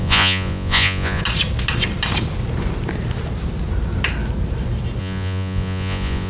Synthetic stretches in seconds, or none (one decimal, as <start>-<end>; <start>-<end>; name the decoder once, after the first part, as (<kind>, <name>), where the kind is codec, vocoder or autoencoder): 0.0-1.2 (vocoder, Vocos); 5.0-6.3